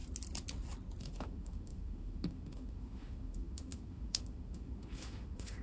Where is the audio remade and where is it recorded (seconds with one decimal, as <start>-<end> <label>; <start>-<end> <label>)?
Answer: 0.0-1.0 recorded; 1.0-5.6 remade